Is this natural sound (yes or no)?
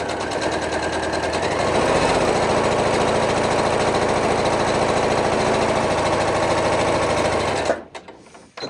yes